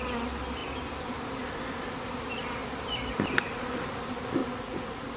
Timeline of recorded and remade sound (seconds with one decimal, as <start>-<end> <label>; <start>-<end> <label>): 0.0-4.4 recorded; 4.4-5.2 remade